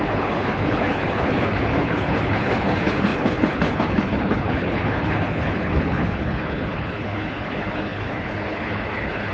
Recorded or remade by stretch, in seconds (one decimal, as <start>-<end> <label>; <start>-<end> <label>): 0.0-9.3 remade